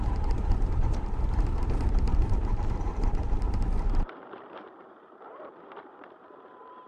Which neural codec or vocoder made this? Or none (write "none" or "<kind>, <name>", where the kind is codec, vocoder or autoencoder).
vocoder, BigVGAN v2